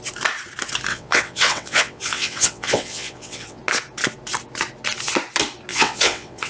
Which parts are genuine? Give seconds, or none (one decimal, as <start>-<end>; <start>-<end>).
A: 0.0-0.9; 3.6-5.7